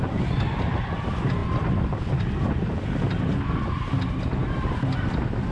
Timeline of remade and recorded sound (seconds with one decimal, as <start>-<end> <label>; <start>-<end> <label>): 0.0-5.5 recorded